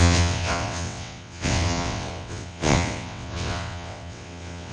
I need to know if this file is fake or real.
fake